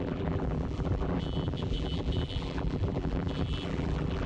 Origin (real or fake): fake